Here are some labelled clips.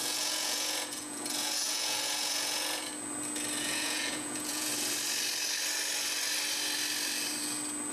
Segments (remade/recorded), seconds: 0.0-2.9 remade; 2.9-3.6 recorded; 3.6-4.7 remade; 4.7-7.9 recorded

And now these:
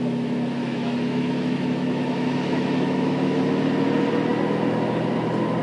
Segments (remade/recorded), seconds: 0.0-0.6 recorded; 0.6-3.5 remade; 3.5-5.6 recorded

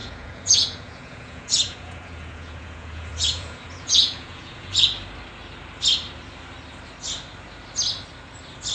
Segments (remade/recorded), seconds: 0.0-4.7 remade; 4.7-8.7 recorded

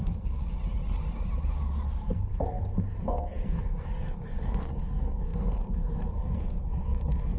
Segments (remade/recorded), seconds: 0.0-0.4 remade; 0.4-2.0 recorded; 2.0-7.4 remade

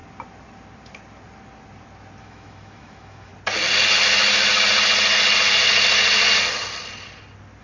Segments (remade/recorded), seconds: 0.0-2.2 recorded; 2.2-3.3 remade; 3.3-7.6 recorded